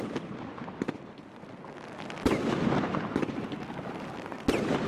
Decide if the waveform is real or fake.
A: real